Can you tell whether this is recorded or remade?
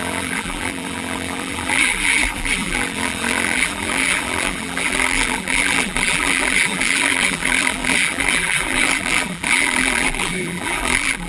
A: remade